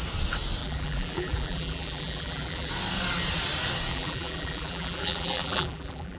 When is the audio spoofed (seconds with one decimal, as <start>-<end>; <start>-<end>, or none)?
0.6-2.7; 3.9-6.2